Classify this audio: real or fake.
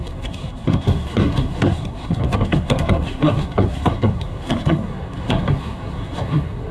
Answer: fake